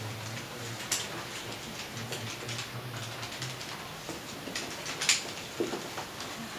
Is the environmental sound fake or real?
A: real